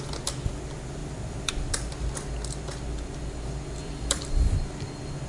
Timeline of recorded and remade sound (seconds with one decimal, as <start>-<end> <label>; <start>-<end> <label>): 0.0-1.0 recorded; 1.0-1.5 remade; 1.5-3.8 recorded; 3.8-4.4 remade; 4.4-5.3 recorded